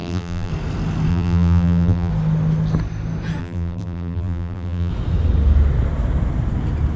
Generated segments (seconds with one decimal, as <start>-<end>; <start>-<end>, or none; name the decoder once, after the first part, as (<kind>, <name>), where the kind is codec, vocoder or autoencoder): 0.0-0.5 (vocoder, BigVGAN v2); 1.1-2.1; 3.4-4.9